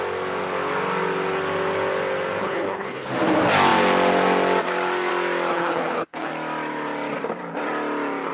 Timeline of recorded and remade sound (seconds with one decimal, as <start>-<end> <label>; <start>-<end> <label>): 0.0-2.4 recorded; 2.4-3.1 remade; 3.1-5.5 recorded; 5.5-6.3 remade; 6.3-8.3 recorded